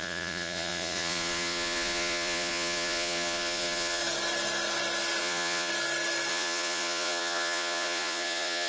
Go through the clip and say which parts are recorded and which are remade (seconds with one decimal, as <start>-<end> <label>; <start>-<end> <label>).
0.0-4.0 remade; 4.0-5.2 recorded; 5.2-5.7 remade; 5.7-6.3 recorded; 6.3-8.7 remade